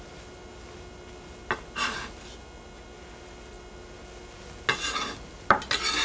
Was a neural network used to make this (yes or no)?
no